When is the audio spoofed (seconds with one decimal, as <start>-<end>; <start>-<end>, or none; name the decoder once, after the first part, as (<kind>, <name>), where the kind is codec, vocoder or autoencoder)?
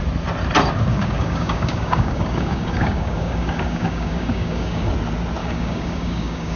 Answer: 0.9-4.9 (codec, DAC); 5.4-6.6